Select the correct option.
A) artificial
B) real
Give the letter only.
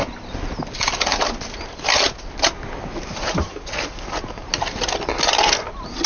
B